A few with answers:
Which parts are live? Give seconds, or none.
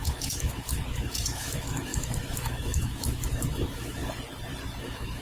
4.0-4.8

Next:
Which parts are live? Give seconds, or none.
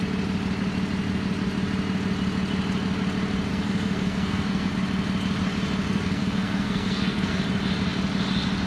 0.0-3.5; 4.7-5.9; 7.4-8.7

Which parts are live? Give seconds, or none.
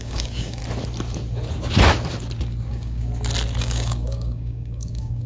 0.6-2.7; 3.1-3.6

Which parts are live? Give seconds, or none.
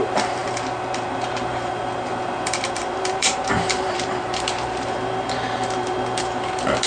none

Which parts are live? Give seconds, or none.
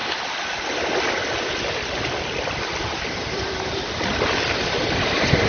0.0-5.5